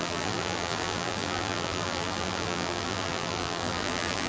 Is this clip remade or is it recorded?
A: remade